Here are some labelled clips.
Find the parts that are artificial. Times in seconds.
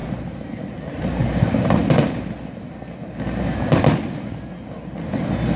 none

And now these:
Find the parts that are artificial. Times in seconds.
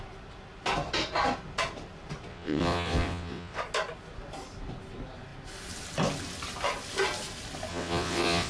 2.3-3.6 (vocoder, WaveNeXt); 7.7-8.5